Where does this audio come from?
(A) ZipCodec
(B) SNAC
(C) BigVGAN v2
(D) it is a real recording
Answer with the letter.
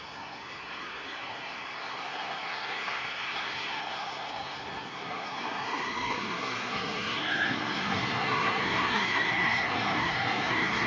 B